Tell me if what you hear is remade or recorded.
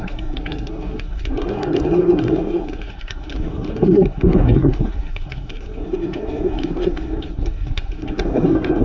remade